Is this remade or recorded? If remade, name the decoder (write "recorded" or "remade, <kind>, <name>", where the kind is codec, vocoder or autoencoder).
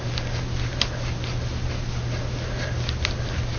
recorded